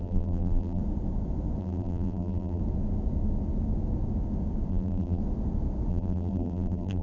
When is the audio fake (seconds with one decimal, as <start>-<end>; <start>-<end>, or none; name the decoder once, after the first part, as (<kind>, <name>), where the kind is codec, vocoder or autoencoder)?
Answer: 0.0-0.8 (vocoder, BigVGAN v2); 1.6-2.6; 4.7-5.2; 5.9-7.0